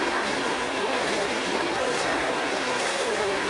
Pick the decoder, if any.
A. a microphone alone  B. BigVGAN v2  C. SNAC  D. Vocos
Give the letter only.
C